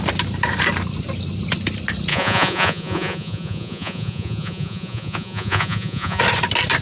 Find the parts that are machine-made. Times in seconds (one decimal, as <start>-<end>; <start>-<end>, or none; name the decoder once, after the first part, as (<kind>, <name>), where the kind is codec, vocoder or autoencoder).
2.1-6.2 (vocoder, Vocos)